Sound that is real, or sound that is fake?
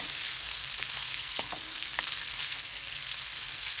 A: fake